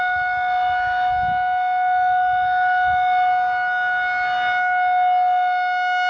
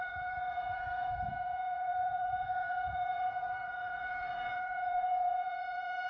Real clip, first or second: first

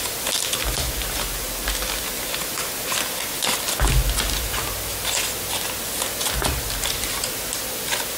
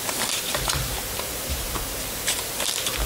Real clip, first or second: first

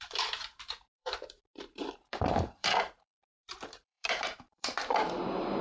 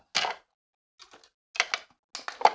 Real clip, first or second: second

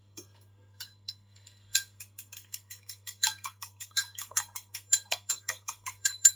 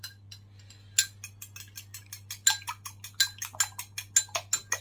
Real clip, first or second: second